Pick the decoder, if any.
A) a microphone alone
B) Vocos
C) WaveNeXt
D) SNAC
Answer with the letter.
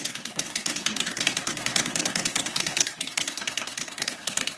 D